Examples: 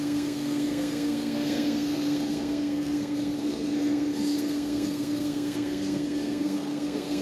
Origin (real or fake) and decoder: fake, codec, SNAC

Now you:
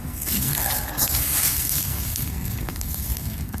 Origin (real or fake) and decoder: fake, codec, SNAC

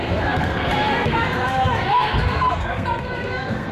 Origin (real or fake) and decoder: fake, codec, SNAC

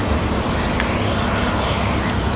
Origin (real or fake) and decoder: real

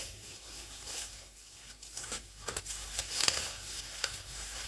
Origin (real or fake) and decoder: fake, codec, SNAC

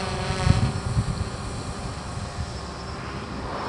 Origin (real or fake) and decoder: real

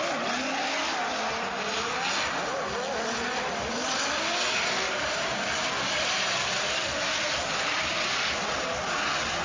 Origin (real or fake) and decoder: real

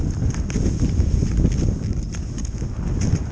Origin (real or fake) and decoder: real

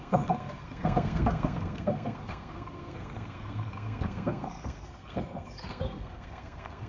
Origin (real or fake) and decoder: fake, codec, SNAC